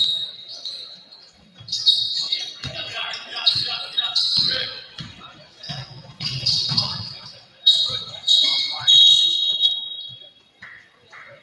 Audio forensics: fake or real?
fake